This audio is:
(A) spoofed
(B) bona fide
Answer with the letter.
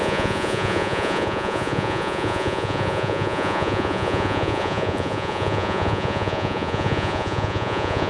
A